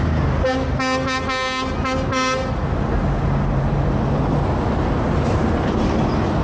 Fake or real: real